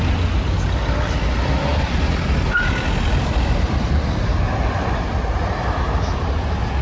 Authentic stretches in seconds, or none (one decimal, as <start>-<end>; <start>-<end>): 0.0-1.7; 4.4-6.8